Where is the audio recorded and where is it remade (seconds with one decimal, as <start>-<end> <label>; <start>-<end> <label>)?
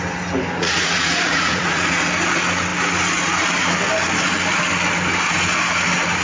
0.0-0.6 recorded; 0.6-2.1 remade; 2.1-6.2 recorded